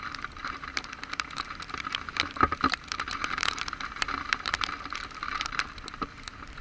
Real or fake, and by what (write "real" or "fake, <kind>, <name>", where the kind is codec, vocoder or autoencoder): fake, vocoder, BigVGAN v2